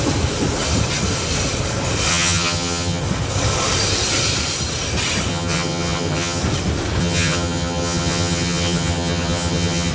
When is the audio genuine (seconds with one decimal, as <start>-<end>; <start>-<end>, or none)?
0.0-2.1; 3.0-5.3; 6.4-7.0